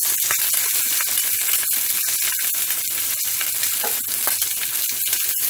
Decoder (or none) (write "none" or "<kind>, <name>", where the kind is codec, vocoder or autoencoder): none